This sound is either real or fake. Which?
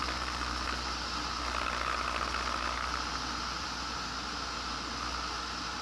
real